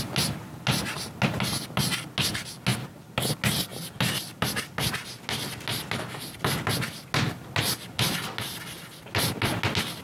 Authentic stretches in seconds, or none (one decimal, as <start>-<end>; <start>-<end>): 0.0-10.0

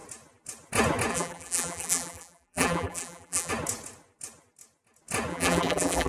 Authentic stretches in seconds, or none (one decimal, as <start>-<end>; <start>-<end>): 0.0-1.1; 3.5-5.3

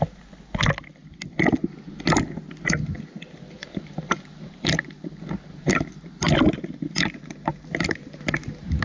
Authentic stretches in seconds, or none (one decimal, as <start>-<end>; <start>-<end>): 0.0-3.6

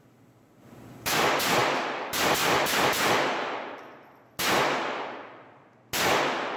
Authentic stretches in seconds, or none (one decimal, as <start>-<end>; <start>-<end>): 0.0-6.6